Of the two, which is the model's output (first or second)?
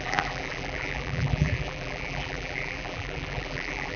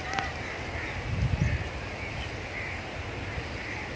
first